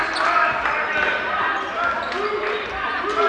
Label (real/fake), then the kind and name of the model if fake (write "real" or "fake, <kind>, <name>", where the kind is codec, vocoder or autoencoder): real